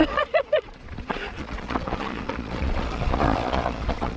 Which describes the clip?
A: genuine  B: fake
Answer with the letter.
B